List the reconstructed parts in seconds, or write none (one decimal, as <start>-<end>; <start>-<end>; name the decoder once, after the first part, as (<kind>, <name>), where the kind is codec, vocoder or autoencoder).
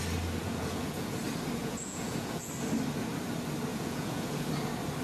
0.4-1.2 (vocoder, Vocos); 1.6-2.5; 3.7-4.5